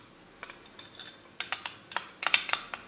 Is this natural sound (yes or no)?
yes